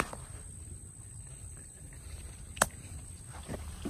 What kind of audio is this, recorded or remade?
recorded